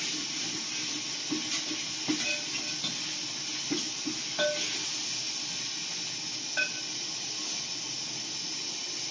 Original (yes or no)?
yes